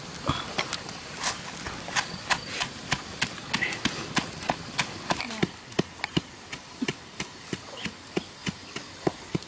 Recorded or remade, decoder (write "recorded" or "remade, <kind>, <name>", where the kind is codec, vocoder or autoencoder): recorded